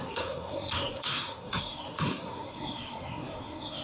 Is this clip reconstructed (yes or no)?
yes